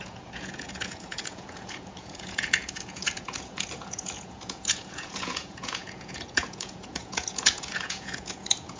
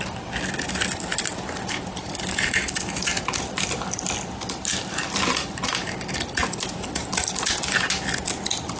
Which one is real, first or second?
second